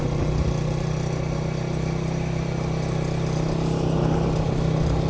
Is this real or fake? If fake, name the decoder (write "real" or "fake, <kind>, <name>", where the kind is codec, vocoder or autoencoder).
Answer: real